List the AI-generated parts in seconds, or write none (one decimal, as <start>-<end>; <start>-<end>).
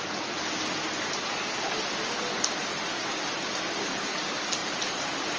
4.6-5.4